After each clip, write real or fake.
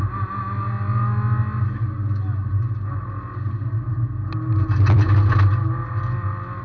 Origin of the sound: real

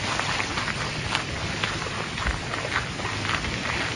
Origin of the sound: real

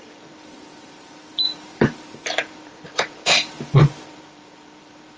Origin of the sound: fake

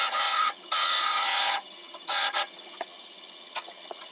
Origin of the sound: fake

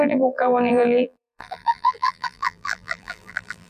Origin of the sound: fake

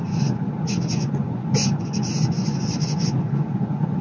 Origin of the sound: fake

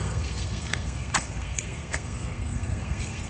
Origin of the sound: fake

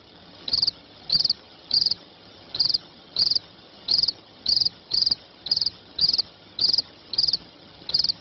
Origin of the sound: fake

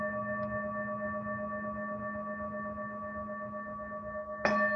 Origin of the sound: real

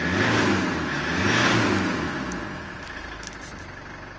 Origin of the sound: real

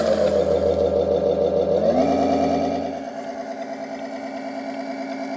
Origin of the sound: real